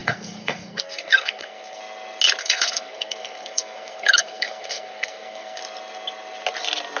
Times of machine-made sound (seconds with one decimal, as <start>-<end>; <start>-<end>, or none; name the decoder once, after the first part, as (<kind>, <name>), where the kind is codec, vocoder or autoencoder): 0.0-1.8 (codec, SNAC); 2.4-5.6